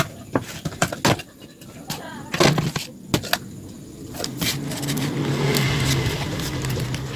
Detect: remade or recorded recorded